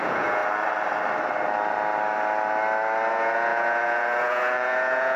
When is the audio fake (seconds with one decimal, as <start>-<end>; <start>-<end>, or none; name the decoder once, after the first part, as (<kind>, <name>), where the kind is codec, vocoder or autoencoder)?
0.0-0.4 (vocoder, Vocos); 3.1-5.2